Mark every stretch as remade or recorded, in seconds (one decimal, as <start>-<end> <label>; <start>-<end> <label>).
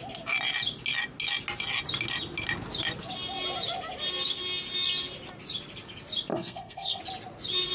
0.0-6.3 recorded; 6.3-7.0 remade; 7.0-7.7 recorded